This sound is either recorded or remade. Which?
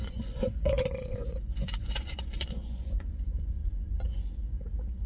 remade